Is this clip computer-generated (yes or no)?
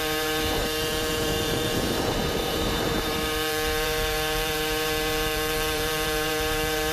yes